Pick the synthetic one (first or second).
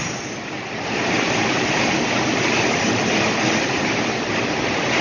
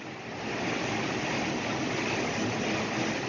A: first